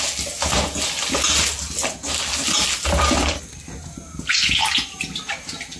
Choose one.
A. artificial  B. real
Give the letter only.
B